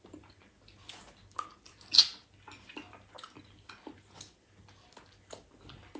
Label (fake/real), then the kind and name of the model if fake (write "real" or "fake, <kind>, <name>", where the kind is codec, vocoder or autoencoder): real